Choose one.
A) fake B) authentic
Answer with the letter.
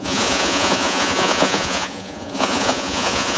A